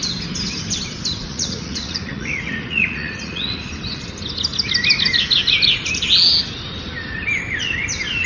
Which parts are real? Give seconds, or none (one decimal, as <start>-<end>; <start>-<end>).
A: 0.0-1.2; 3.7-8.3